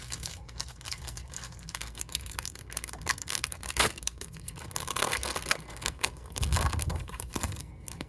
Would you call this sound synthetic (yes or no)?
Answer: yes